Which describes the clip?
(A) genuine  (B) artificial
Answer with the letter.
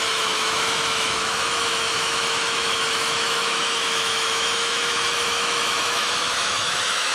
B